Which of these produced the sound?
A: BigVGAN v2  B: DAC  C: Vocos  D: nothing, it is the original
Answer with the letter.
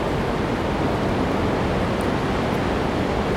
D